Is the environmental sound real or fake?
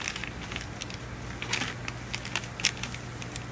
real